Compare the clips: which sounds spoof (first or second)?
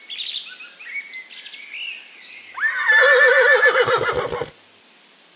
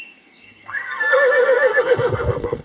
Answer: second